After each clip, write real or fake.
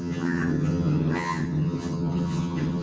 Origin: fake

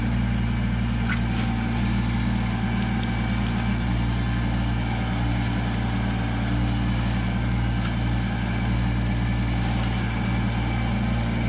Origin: real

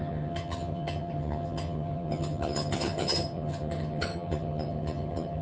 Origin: fake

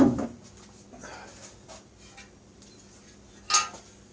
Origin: real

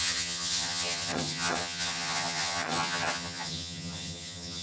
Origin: fake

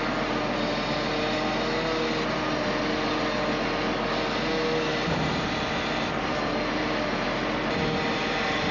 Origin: real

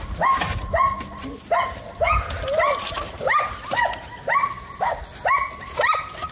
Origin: real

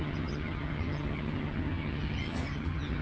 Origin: fake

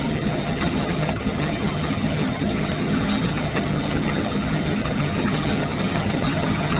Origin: fake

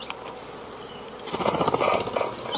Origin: real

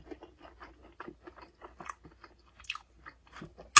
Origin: real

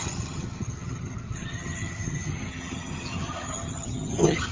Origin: fake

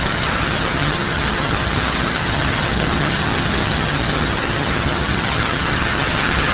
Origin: fake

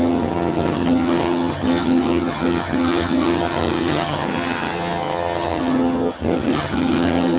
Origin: fake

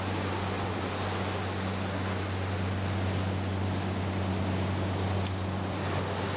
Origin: real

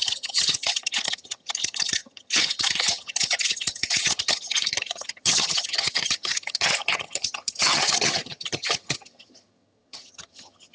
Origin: fake